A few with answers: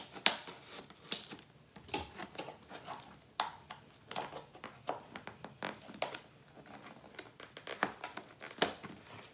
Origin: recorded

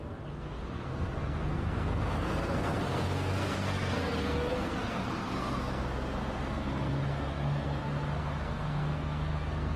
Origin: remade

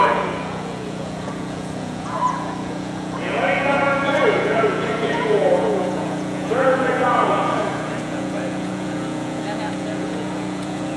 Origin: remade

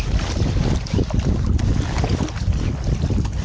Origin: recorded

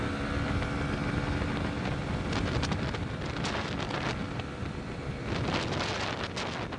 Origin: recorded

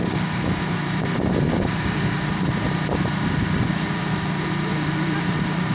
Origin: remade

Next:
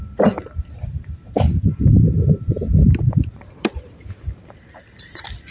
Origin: remade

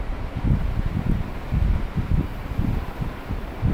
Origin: recorded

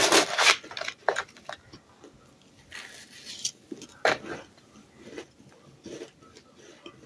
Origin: recorded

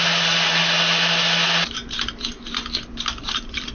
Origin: recorded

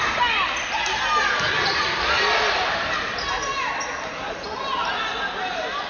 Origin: recorded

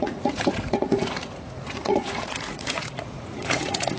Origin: remade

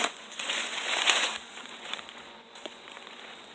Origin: remade